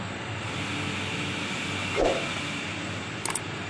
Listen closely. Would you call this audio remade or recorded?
recorded